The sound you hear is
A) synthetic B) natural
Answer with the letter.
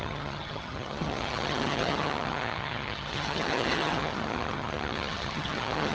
A